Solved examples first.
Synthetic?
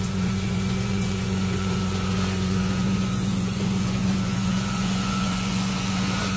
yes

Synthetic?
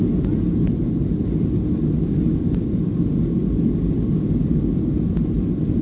no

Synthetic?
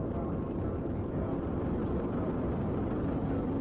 no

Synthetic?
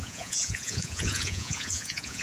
yes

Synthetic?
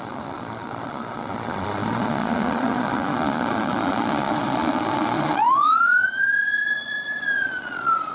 yes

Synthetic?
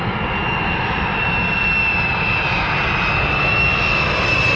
no